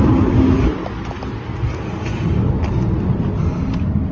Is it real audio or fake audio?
real